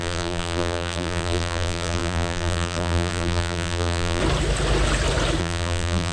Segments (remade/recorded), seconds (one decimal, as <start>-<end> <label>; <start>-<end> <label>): 0.0-4.2 remade; 4.2-5.4 recorded; 5.4-6.1 remade